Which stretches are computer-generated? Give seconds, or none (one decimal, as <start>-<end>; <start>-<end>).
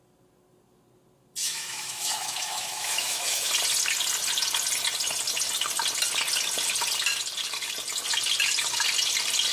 1.4-3.5